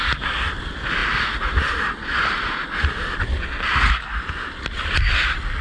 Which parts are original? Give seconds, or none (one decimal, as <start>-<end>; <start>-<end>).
0.0-5.6